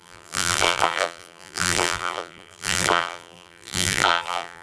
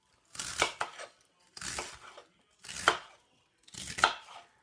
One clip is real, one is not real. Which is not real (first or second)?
first